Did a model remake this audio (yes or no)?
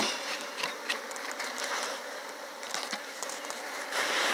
yes